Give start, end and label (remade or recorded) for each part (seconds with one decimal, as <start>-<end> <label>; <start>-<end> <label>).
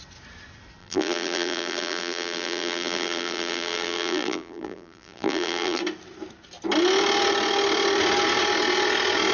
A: 0.0-0.8 recorded; 0.8-5.8 remade; 5.8-9.3 recorded